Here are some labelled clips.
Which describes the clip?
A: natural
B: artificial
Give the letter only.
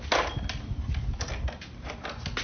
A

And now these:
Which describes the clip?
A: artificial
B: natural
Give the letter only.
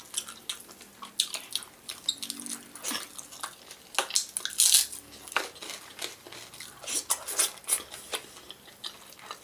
B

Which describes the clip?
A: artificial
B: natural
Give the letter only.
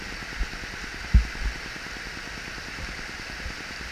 B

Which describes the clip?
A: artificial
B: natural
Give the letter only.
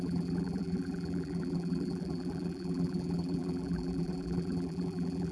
A